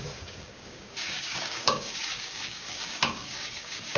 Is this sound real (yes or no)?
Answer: no